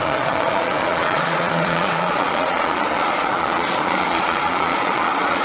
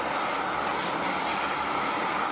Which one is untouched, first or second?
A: second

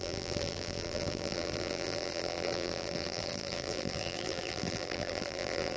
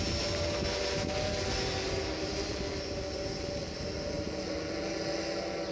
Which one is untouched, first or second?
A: second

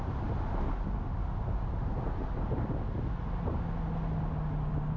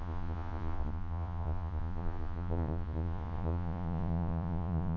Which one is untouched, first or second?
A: first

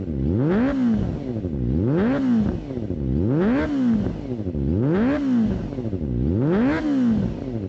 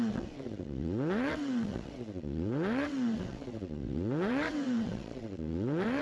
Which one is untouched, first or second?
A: first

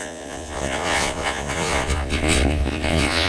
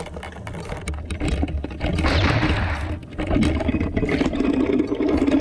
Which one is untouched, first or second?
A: second